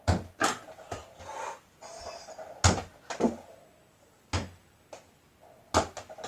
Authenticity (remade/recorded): recorded